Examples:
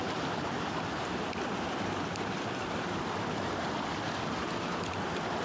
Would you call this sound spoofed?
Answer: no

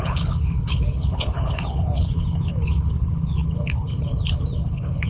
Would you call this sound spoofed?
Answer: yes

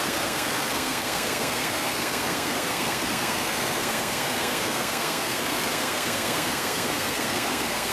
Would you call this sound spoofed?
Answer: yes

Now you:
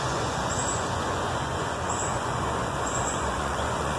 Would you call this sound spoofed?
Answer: yes